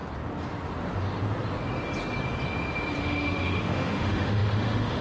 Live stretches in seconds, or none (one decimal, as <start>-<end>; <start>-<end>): 0.0-3.0